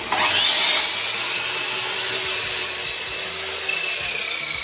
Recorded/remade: recorded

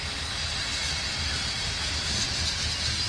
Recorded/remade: recorded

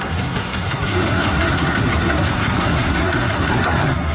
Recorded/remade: remade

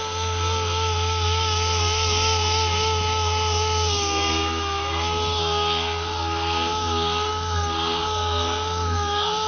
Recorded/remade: remade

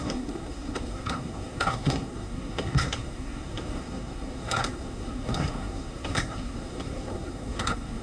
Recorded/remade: remade